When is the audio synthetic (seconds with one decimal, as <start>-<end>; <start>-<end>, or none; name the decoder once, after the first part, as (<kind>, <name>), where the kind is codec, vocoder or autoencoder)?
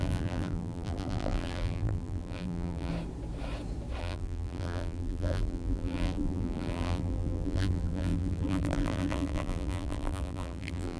0.0-2.9 (vocoder, BigVGAN v2); 4.0-11.0